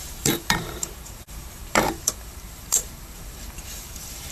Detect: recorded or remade remade